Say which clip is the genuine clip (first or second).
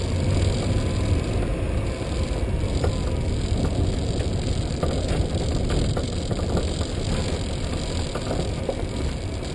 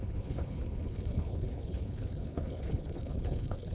first